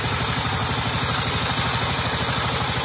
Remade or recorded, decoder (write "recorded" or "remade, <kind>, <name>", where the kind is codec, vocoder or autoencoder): recorded